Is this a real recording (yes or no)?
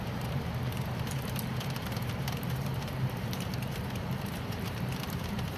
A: no